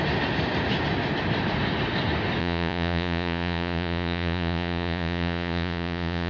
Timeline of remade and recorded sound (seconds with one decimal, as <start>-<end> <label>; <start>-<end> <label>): 0.0-2.4 recorded; 2.4-6.3 remade